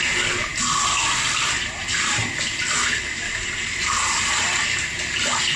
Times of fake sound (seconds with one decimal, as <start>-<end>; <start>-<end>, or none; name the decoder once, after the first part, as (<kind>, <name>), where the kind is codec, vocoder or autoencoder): 2.8-4.2 (vocoder, BigVGAN v2)